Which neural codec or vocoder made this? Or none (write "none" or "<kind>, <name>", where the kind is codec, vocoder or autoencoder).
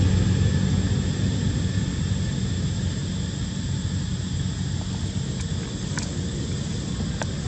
none